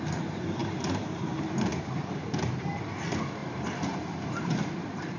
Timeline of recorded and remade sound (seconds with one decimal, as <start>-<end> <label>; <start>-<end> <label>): 0.0-5.2 remade